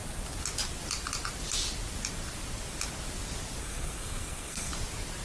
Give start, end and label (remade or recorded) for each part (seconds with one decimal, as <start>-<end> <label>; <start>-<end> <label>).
0.0-3.6 recorded; 3.6-4.7 remade; 4.7-5.2 recorded